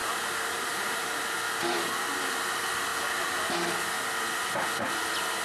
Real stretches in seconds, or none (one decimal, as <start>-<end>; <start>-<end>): 1.2-5.4